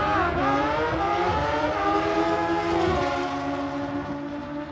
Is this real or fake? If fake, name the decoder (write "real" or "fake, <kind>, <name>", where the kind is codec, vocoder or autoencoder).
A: real